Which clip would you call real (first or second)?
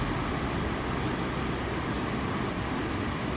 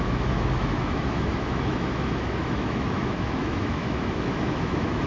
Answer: first